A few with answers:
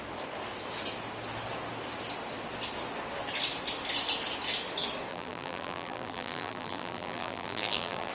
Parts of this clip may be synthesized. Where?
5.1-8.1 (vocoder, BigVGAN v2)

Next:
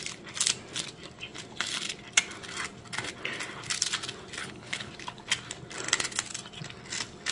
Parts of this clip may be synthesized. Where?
4.4-4.9 (codec, HILCodec)

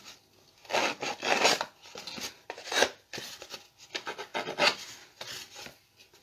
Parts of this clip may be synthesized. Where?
none

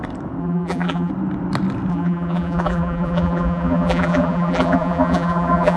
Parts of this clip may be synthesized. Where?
0.4-1.1 (vocoder, BigVGAN v2); 1.9-5.8

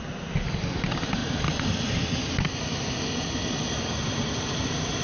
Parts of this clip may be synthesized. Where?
none

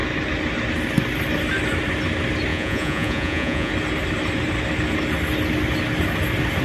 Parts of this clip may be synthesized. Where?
2.5-3.7 (vocoder, Vocos)

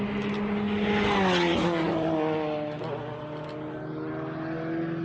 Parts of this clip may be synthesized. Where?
none